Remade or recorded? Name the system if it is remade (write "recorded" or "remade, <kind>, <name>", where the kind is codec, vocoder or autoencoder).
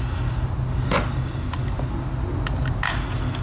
recorded